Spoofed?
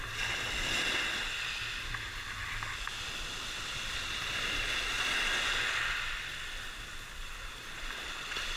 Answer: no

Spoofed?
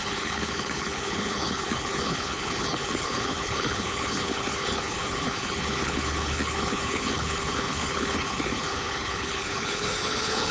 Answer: yes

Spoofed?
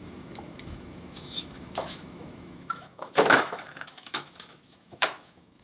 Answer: yes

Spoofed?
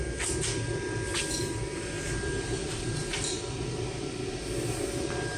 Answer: no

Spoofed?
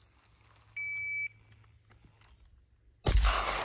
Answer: no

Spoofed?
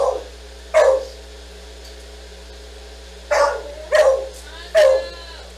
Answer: no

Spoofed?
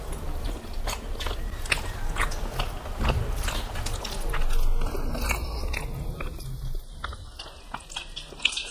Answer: no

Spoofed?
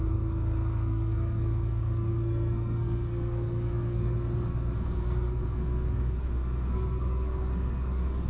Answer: yes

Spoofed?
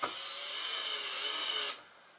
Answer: no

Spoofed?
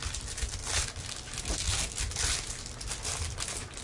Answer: no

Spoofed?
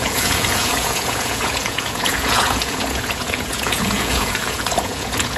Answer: yes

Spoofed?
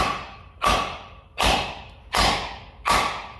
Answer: no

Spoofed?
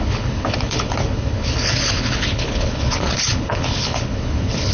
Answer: yes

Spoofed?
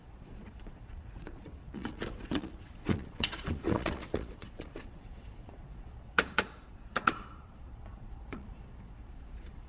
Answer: yes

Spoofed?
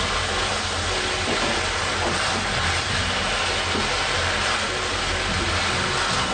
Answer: no